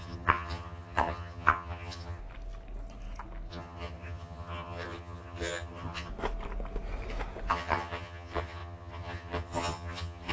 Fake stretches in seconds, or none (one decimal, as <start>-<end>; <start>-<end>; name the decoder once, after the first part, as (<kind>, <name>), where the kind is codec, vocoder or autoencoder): 0.0-2.2 (vocoder, HiFi-GAN); 3.5-6.1; 7.5-10.3